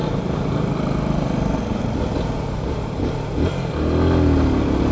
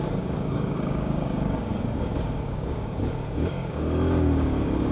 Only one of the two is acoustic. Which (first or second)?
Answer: first